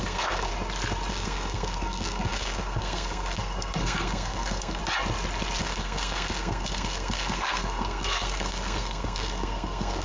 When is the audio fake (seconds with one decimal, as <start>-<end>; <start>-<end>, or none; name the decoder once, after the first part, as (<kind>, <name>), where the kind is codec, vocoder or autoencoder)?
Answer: 0.0-0.5 (codec, SNAC); 1.1-4.8; 5.6-10.0